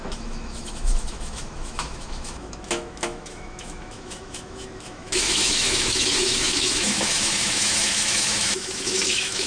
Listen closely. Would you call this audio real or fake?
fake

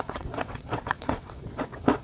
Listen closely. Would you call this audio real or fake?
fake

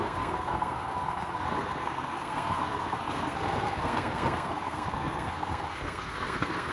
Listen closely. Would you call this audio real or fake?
fake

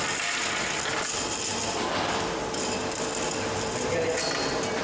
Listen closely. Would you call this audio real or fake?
real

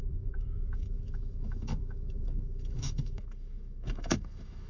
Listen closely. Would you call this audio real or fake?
fake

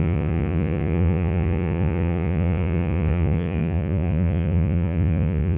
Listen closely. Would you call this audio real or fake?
fake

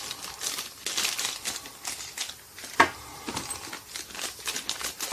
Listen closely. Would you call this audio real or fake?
real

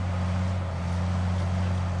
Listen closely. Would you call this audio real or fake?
real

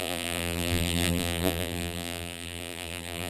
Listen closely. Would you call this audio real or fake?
fake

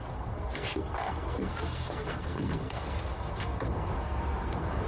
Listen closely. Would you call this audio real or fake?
fake